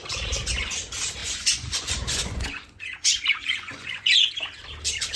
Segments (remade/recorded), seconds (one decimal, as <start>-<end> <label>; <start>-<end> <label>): 0.0-1.2 recorded; 1.2-4.3 remade; 4.3-5.2 recorded